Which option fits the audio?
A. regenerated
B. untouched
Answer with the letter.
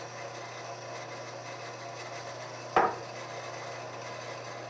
B